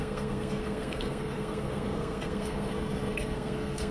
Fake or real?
fake